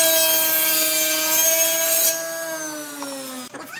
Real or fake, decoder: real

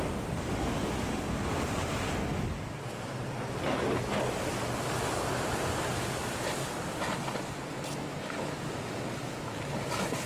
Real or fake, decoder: real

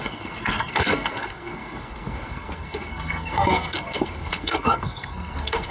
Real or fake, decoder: fake, codec, SNAC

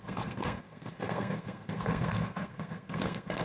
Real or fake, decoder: fake, codec, SNAC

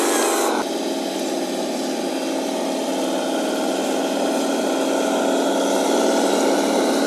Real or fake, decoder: real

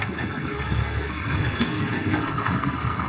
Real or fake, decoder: fake, codec, SNAC